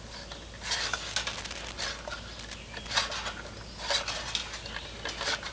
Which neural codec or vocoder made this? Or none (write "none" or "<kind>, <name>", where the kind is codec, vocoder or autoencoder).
none